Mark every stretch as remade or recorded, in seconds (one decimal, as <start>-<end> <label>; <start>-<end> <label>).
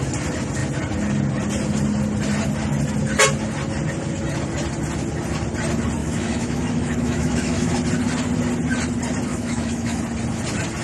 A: 0.0-6.0 recorded; 6.0-7.7 remade; 7.7-9.3 recorded; 9.3-10.0 remade; 10.0-10.8 recorded